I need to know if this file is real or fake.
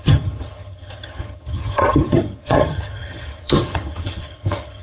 fake